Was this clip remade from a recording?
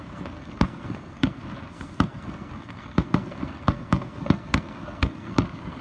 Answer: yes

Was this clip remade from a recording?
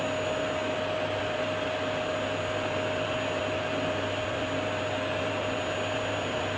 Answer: no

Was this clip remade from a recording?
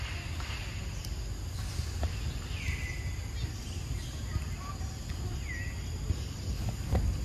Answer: no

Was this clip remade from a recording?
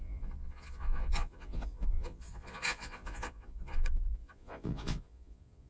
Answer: yes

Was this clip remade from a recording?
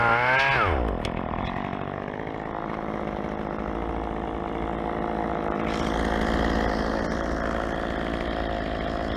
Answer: no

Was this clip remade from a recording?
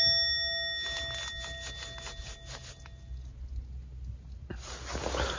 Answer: no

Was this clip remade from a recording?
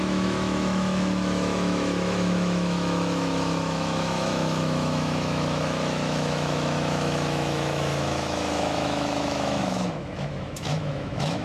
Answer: yes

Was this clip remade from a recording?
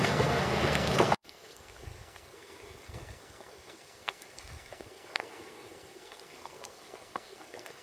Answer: yes